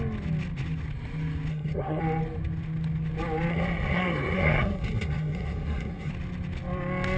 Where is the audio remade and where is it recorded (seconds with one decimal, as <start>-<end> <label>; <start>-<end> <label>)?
0.0-1.5 recorded; 1.5-2.0 remade; 2.0-3.5 recorded; 3.5-6.1 remade; 6.1-7.2 recorded